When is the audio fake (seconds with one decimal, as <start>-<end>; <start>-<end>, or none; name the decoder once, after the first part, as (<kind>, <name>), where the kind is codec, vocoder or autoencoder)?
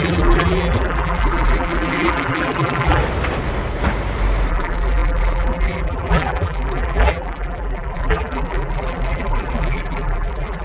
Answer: 0.0-3.0 (vocoder, BigVGAN v2); 4.5-10.6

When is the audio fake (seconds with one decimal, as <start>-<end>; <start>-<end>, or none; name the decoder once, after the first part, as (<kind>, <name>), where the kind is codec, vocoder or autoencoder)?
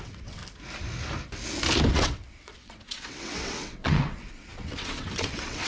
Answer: 0.0-0.4 (vocoder, WaveNeXt); 1.9-5.7